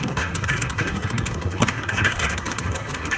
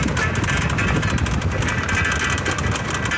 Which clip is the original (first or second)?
second